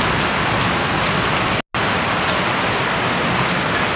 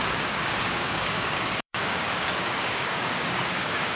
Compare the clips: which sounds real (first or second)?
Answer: first